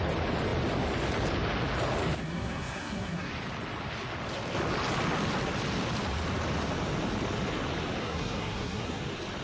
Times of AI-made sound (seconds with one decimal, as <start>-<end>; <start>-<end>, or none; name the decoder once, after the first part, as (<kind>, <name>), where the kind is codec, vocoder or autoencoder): 2.2-3.3 (codec, SNAC); 8.0-9.0